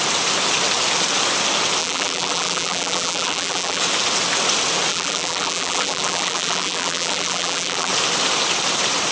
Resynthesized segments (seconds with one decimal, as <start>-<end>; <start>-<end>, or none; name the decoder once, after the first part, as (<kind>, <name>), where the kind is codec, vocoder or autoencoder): 1.8-3.8 (vocoder, BigVGAN v2); 4.9-7.9